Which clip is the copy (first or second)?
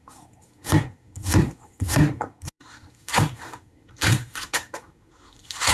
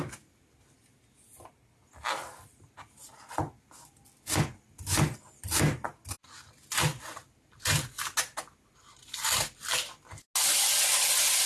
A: first